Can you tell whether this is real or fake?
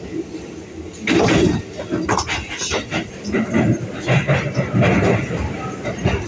real